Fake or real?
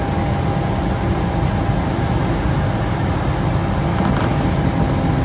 real